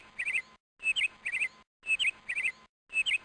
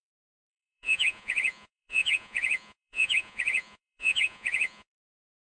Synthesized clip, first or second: second